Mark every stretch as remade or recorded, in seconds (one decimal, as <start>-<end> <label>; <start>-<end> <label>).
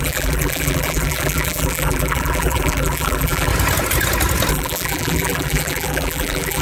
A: 0.0-3.5 remade; 3.5-4.5 recorded; 4.5-6.6 remade